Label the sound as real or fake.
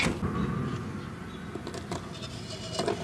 real